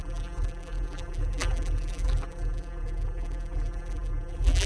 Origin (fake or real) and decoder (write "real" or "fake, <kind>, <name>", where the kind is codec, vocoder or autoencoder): fake, vocoder, BigVGAN v2